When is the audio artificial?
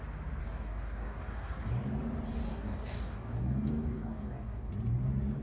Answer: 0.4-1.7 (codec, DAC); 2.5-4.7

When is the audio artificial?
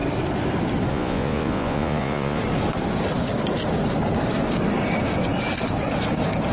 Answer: 0.9-2.4 (vocoder, Vocos)